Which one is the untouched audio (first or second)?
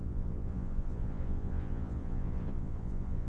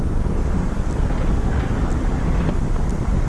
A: second